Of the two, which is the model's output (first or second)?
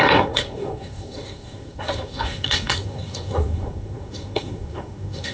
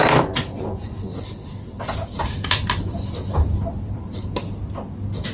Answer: first